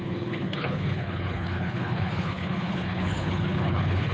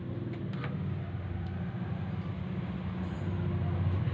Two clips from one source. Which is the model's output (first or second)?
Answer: first